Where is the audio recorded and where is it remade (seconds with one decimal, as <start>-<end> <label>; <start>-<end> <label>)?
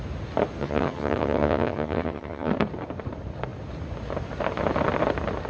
0.0-0.6 recorded; 0.6-2.5 remade; 2.5-5.5 recorded